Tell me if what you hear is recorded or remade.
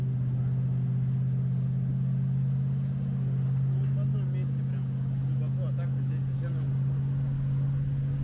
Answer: recorded